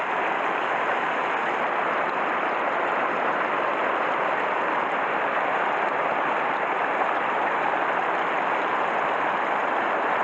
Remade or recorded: remade